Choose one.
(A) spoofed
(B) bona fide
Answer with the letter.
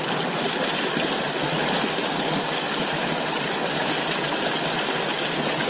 B